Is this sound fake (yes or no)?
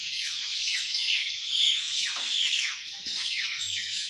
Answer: yes